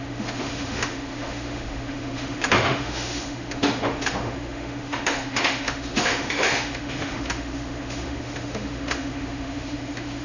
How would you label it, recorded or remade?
remade